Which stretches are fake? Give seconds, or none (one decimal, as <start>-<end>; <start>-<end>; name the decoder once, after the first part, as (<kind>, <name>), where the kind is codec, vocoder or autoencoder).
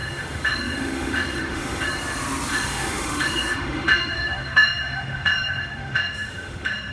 0.0-1.8 (autoencoder, DAC-VAE); 2.5-6.9